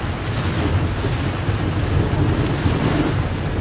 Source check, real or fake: real